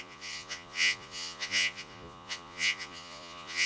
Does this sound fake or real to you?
fake